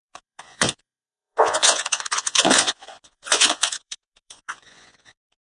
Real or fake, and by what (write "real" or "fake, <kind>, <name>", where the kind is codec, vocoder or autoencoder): fake, vocoder, Vocos